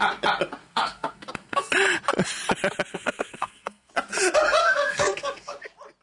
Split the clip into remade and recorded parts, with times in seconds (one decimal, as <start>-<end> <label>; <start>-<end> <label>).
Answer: 0.0-0.6 recorded; 0.6-1.7 remade; 1.7-2.9 recorded; 2.9-3.9 remade; 3.9-4.6 recorded; 4.6-5.6 remade; 5.6-6.0 recorded